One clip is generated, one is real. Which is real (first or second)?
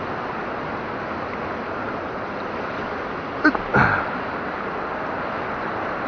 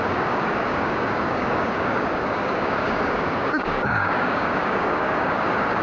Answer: first